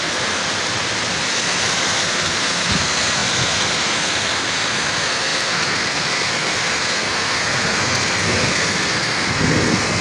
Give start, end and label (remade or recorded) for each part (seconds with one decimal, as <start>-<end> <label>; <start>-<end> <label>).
0.0-0.4 remade; 0.4-1.3 recorded; 1.3-10.0 remade